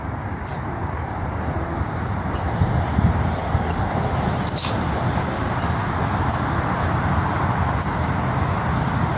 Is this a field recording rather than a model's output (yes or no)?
yes